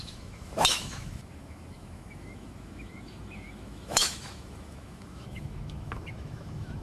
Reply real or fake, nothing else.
fake